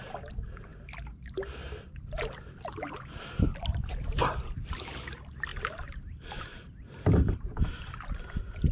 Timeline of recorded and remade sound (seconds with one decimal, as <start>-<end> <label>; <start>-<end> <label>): 0.0-8.7 recorded

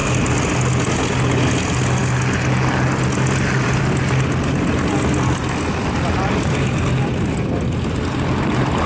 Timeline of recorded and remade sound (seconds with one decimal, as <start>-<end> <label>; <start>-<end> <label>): 0.0-8.9 recorded

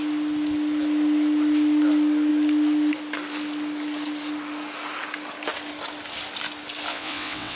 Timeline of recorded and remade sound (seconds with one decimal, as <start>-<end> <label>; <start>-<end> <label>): 0.0-6.9 recorded; 6.9-7.6 remade

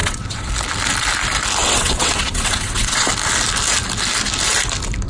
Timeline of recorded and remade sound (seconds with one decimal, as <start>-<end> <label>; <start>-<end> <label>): 0.0-0.5 remade; 0.5-1.6 recorded; 1.6-3.1 remade; 3.1-5.1 recorded

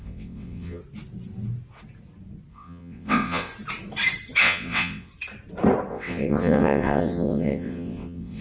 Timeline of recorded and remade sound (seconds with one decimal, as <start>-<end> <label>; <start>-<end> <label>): 0.0-0.8 remade; 0.8-2.5 recorded; 2.5-3.5 remade; 3.5-4.4 recorded; 4.4-5.1 remade; 5.1-5.9 recorded; 5.9-8.4 remade

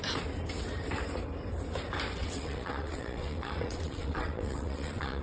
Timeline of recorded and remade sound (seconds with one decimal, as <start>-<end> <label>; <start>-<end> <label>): 0.0-2.2 recorded; 2.2-5.2 remade

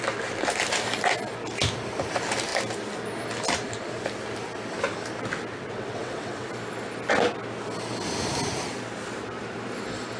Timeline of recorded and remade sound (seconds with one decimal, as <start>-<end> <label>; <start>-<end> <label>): 0.0-5.5 recorded; 5.5-6.5 remade; 6.5-10.2 recorded

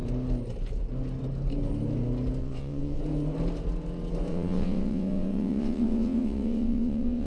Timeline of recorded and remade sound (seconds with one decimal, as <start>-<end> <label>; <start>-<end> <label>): 0.0-2.4 recorded; 2.4-3.0 remade; 3.0-4.3 recorded; 4.3-7.3 remade